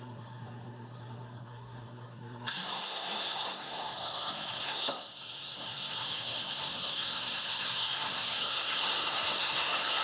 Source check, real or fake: fake